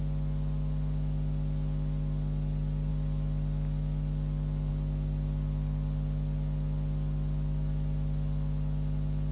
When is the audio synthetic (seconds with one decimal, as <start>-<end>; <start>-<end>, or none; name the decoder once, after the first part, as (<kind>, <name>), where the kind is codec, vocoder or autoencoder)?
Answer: none